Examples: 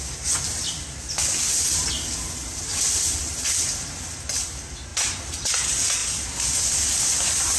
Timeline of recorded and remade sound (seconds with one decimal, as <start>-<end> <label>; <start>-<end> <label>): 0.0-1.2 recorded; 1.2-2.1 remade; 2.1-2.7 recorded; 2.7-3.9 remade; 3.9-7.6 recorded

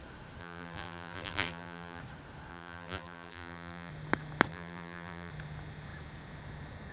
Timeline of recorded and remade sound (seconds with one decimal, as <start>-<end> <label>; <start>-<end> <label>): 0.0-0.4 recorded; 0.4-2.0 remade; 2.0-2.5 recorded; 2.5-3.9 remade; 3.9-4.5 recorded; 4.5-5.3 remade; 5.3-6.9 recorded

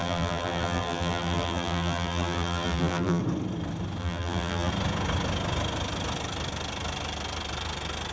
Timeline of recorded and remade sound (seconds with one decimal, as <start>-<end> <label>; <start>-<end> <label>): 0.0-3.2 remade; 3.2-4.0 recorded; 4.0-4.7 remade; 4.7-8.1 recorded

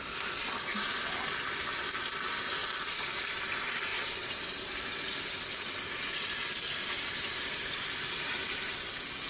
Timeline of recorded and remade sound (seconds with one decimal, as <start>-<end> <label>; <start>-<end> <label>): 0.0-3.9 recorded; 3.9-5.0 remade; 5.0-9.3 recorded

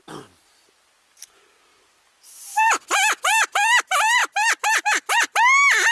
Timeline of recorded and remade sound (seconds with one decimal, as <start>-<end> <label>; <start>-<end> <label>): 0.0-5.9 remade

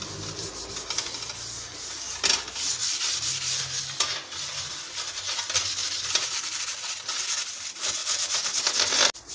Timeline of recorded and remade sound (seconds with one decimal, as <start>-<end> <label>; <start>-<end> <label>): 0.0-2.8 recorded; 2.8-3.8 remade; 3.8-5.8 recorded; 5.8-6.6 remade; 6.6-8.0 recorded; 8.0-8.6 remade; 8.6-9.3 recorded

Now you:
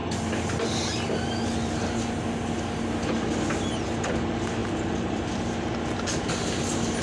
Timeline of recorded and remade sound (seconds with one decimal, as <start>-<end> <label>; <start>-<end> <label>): 0.0-4.6 recorded; 4.6-5.7 remade; 5.7-7.0 recorded